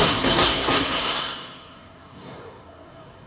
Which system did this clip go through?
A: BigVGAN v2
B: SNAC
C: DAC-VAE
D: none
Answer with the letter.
B